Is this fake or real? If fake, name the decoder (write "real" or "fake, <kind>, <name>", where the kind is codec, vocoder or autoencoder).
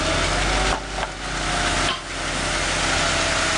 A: real